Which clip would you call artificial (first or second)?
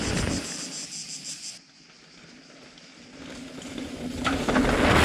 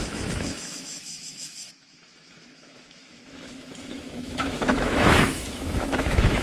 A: second